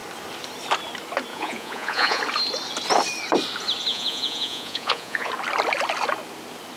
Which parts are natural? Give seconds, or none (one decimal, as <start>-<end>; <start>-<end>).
0.0-1.3; 2.2-3.9; 5.3-6.8